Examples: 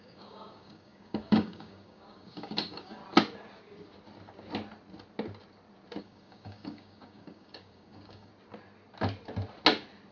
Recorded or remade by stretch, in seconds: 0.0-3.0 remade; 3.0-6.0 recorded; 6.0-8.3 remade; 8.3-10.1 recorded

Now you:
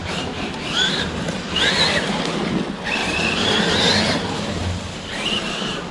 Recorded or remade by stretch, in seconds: 0.0-2.4 remade; 2.4-3.0 recorded; 3.0-4.0 remade; 4.0-5.9 recorded

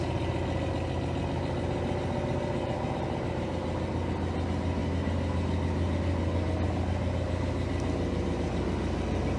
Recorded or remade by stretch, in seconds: 0.0-9.4 recorded